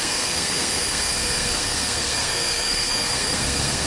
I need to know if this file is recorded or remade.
remade